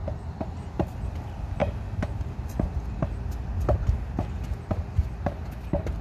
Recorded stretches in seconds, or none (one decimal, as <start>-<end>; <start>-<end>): 0.0-6.0